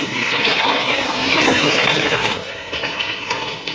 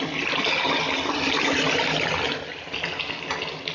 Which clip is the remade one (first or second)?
first